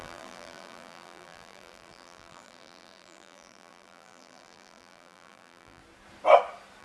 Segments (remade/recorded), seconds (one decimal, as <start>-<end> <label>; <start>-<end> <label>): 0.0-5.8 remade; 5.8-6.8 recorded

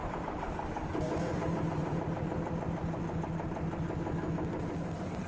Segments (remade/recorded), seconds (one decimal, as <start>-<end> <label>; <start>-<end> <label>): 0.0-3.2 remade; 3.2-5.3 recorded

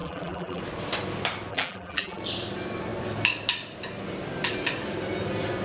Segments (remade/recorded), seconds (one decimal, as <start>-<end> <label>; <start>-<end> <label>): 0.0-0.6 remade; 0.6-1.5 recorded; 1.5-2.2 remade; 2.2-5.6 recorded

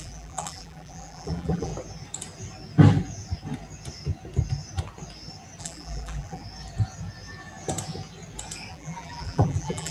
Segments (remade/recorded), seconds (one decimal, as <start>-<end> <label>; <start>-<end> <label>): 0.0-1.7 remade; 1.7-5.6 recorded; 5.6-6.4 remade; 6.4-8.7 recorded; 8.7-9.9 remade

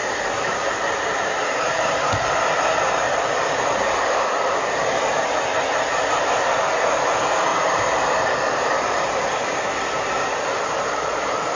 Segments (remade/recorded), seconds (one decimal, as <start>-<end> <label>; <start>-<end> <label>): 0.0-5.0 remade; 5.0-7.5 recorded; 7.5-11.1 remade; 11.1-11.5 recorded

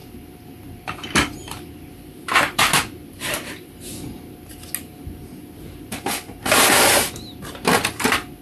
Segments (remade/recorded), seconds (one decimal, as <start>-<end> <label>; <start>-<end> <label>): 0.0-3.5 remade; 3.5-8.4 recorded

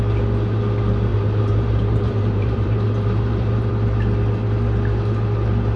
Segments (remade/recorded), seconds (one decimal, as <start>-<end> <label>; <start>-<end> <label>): 0.0-1.1 recorded; 1.1-3.7 remade; 3.7-5.8 recorded

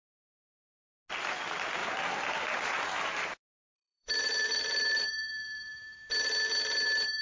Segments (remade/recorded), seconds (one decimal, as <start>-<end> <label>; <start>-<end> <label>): 0.0-1.8 recorded; 1.8-6.1 remade; 6.1-7.2 recorded